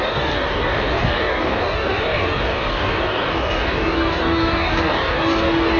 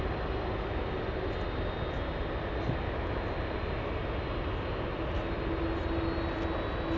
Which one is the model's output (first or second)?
first